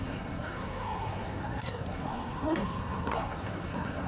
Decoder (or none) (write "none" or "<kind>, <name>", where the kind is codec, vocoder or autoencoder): codec, SNAC